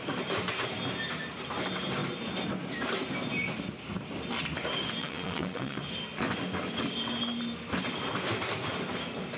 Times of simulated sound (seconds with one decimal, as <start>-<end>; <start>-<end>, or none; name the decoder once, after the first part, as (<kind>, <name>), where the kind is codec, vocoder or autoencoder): 5.0-5.8 (vocoder, WaveNeXt)